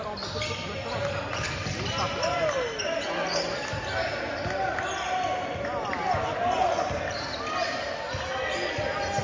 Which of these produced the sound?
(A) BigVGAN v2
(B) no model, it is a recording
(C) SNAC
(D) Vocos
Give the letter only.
B